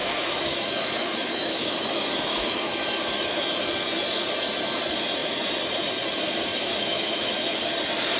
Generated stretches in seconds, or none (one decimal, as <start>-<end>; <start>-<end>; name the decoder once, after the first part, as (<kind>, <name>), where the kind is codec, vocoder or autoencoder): 0.0-3.5 (autoencoder, DAC-VAE); 6.5-7.7

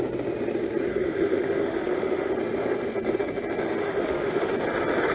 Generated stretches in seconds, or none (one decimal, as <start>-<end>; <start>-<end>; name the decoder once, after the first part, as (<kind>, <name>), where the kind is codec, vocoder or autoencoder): 0.9-2.3 (autoencoder, DAC-VAE); 3.8-4.5

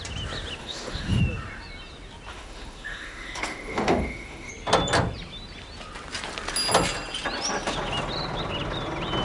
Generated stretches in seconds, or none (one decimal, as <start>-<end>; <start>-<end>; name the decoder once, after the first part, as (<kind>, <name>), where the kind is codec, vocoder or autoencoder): 0.6-1.2 (autoencoder, DAC-VAE); 2.3-4.5